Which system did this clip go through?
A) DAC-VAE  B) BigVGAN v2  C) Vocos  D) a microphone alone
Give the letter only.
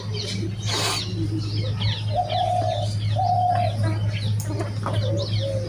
D